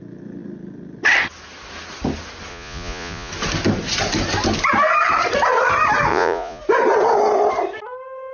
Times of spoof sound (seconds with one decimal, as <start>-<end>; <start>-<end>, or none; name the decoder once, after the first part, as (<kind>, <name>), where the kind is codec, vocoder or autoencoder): 2.5-3.3 (vocoder, Vocos); 6.1-6.6